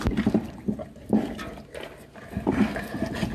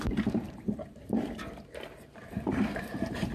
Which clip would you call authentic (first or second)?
first